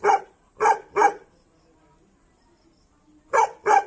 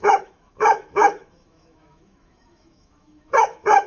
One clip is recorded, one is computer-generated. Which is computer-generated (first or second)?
second